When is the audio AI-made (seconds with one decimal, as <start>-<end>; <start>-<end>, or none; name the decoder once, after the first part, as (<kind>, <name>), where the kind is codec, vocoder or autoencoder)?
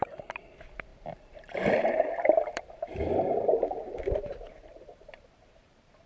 0.0-6.1 (vocoder, BigVGAN v2)